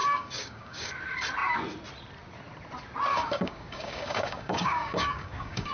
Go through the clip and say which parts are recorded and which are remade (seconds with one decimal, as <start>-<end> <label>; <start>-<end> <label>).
0.0-0.9 remade; 0.9-3.1 recorded; 3.1-5.7 remade